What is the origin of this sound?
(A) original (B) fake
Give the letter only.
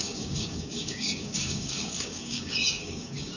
B